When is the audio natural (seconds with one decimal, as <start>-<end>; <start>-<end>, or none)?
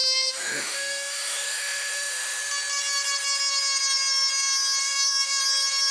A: 2.4-4.8; 5.4-5.9